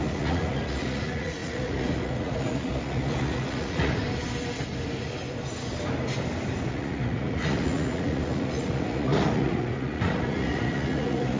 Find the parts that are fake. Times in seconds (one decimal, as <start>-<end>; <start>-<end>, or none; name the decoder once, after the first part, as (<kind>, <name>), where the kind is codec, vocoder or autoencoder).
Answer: 0.0-4.0 (vocoder, Vocos); 6.7-11.4